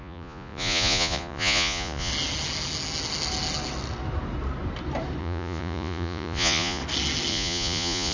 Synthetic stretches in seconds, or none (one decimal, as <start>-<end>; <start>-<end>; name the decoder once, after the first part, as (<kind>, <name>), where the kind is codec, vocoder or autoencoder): 0.0-2.1 (vocoder, Vocos); 5.2-6.8; 7.3-8.1